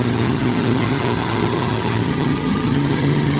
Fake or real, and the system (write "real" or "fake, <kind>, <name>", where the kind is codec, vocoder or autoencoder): fake, vocoder, HiFi-GAN